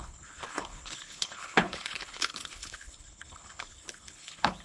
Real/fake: fake